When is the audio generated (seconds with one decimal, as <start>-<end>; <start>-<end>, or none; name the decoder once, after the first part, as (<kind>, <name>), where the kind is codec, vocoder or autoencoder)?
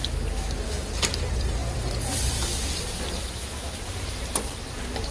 0.0-0.8 (autoencoder, DAC-VAE); 3.2-3.8